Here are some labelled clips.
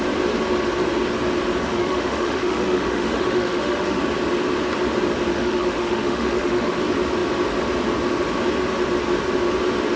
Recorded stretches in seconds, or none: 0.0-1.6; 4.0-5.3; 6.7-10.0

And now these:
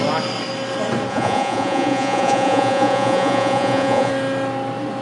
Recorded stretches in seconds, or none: 0.0-1.1; 4.1-5.0

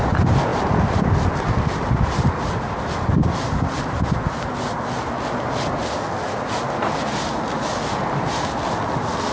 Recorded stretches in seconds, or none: 0.0-0.5; 4.8-9.3

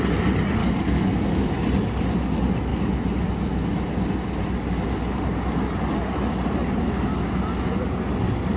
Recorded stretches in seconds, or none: 0.0-0.6; 1.5-8.6

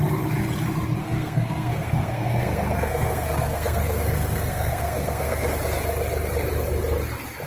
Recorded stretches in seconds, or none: 0.0-1.0; 5.5-7.5

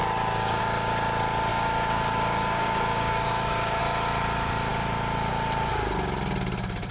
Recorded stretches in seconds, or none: 0.6-1.5; 3.8-6.9

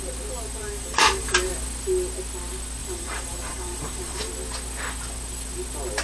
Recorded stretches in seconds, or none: 0.0-0.6; 1.5-2.8; 4.3-6.0